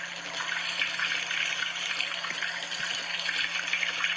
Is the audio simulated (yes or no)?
no